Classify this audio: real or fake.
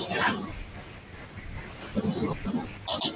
real